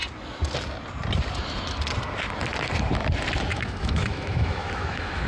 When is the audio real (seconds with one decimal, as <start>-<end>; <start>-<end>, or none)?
0.0-3.5